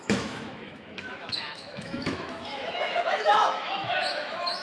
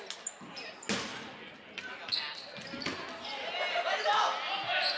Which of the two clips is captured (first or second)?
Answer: second